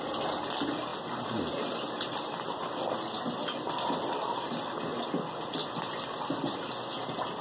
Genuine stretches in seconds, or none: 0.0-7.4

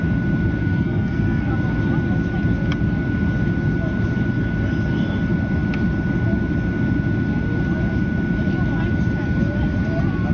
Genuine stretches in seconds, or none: 0.0-0.6; 1.5-10.3